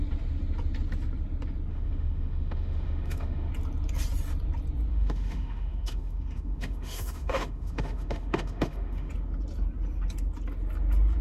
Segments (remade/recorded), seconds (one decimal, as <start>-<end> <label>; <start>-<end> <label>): 0.0-1.7 recorded; 1.7-3.5 remade; 3.5-4.9 recorded; 4.9-9.1 remade; 9.1-11.2 recorded